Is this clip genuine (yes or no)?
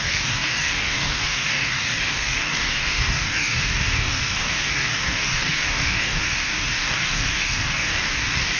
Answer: no